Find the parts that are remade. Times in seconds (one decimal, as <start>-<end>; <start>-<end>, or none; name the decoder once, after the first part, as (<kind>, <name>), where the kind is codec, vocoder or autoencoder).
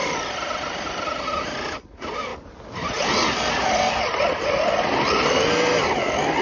none